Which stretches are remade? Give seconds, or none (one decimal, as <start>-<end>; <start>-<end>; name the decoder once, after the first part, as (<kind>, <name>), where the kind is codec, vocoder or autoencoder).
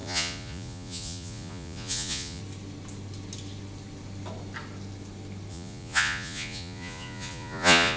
0.0-2.4 (vocoder, Vocos); 5.5-8.0